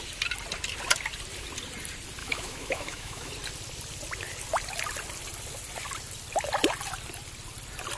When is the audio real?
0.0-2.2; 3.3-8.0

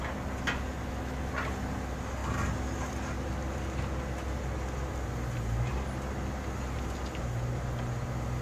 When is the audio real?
0.0-0.8; 1.3-8.4

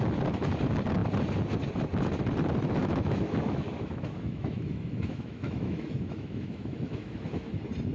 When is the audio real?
0.0-2.8; 7.5-7.9

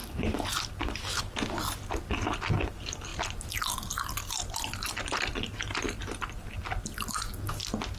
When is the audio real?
0.0-8.0

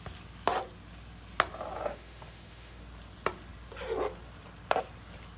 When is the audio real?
0.0-1.9; 2.8-5.4

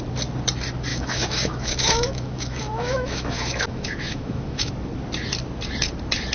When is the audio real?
0.0-0.9; 4.7-6.3